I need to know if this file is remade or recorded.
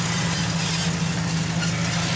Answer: recorded